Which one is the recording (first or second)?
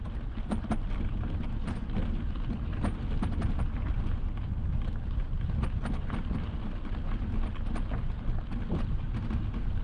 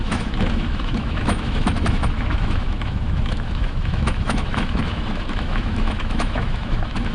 first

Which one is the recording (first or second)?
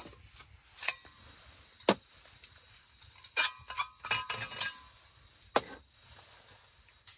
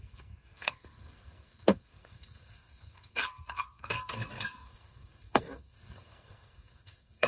first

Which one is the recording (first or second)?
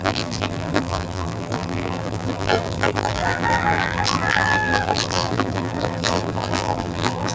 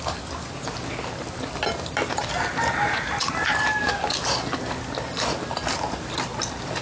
second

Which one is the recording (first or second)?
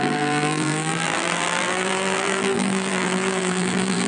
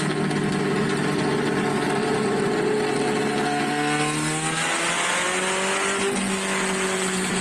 second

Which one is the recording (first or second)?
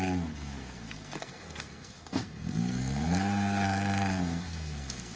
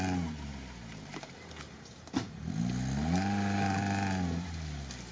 second